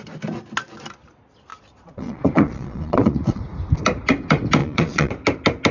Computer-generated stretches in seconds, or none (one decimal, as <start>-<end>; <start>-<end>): 1.5-3.4; 4.6-5.1